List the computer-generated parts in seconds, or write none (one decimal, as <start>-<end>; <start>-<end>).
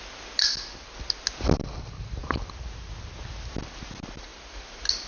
none